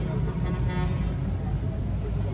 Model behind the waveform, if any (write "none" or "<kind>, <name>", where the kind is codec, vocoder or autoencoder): none